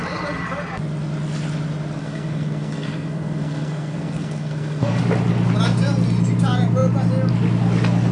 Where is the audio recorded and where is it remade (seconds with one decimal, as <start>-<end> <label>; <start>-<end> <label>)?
0.0-2.0 recorded; 2.0-5.0 remade; 5.0-8.1 recorded